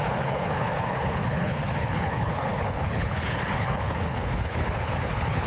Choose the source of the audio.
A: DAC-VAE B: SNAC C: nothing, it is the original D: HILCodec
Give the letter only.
D